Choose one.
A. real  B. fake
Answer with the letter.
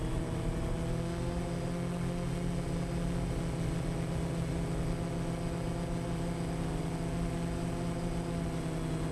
A